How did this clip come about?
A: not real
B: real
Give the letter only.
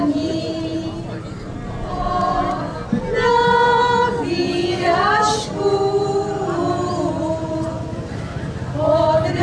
B